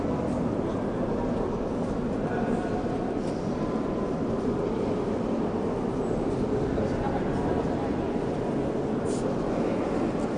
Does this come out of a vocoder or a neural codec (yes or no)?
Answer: no